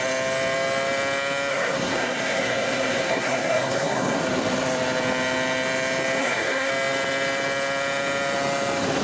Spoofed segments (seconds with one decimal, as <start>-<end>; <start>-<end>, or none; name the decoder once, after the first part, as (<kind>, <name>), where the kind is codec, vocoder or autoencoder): 1.5-4.2 (codec, SNAC); 6.2-6.7